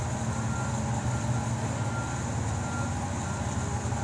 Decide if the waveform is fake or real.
real